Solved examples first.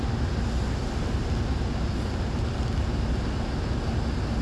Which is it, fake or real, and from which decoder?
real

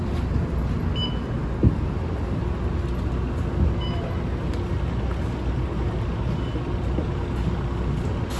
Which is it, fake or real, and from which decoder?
real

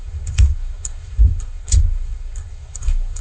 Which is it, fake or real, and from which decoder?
fake, codec, SNAC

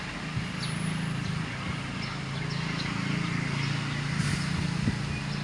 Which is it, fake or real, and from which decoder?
real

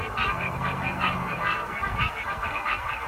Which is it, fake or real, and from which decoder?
fake, codec, SNAC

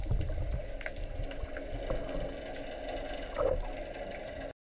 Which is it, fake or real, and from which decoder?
real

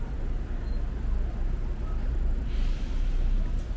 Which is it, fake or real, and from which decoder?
real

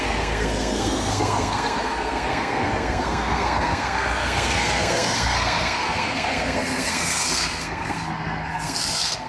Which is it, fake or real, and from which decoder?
fake, codec, SNAC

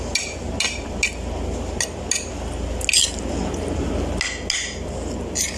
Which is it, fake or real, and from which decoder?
real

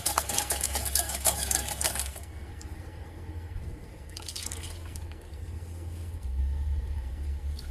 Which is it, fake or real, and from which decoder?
fake, codec, SNAC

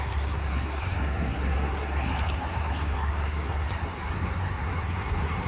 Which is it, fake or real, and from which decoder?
fake, codec, SNAC